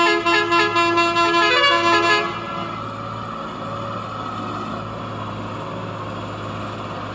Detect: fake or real real